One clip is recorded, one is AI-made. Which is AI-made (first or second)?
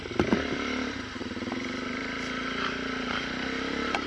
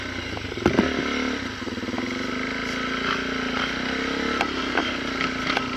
first